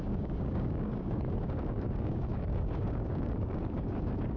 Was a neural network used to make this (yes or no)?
yes